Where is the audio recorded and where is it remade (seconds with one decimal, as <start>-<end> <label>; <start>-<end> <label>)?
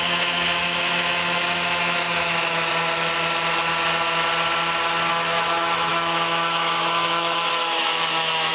0.0-2.7 remade; 2.7-5.1 recorded; 5.1-8.5 remade